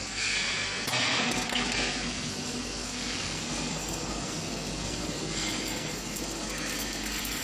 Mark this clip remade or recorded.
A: remade